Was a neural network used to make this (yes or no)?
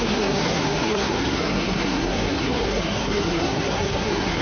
yes